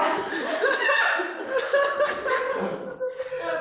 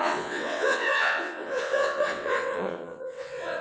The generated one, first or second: second